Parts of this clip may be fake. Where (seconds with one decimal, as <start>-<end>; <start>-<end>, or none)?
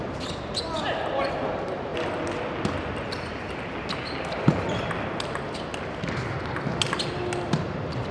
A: none